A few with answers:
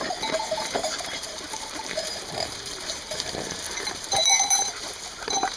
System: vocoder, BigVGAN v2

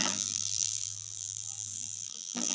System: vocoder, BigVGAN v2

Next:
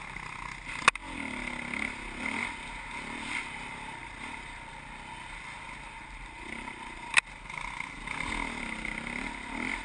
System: none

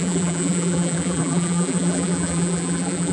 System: vocoder, BigVGAN v2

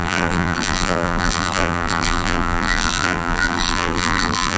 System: vocoder, BigVGAN v2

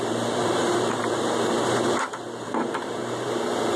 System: vocoder, BigVGAN v2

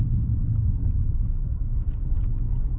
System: none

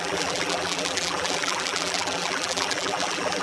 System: vocoder, BigVGAN v2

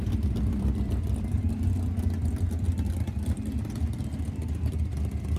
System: vocoder, BigVGAN v2